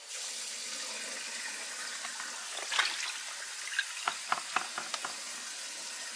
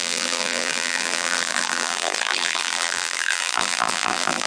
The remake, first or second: second